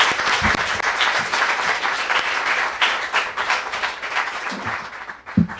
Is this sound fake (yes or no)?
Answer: no